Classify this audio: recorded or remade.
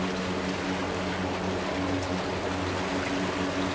recorded